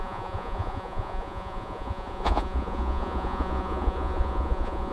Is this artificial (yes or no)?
yes